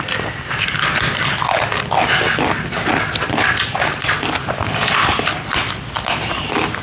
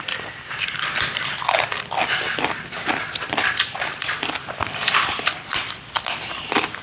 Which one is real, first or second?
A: first